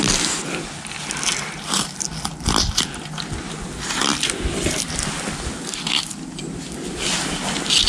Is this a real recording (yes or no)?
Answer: yes